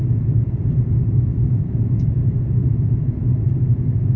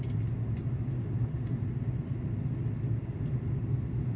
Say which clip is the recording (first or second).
second